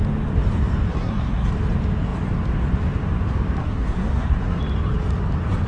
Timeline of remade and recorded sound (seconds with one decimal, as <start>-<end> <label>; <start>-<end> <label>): 0.0-0.9 recorded; 0.9-1.5 remade; 1.5-3.6 recorded; 3.6-4.6 remade; 4.6-5.7 recorded